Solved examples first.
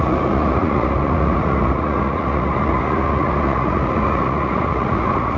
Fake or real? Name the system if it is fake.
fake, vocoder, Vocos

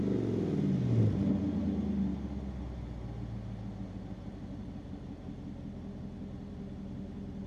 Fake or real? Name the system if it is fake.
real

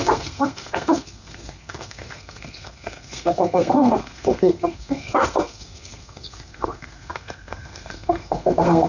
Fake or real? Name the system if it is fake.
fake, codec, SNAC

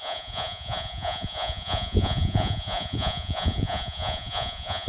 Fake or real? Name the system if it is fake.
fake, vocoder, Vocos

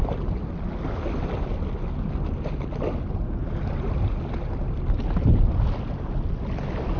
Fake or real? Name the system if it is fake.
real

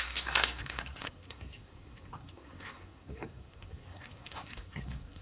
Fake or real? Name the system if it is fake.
fake, codec, SNAC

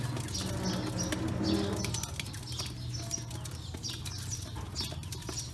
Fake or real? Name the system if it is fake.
real